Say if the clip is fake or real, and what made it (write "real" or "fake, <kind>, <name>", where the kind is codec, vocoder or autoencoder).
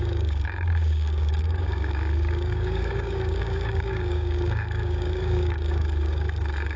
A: fake, codec, DAC